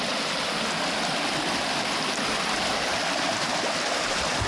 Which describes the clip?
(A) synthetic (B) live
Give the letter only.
B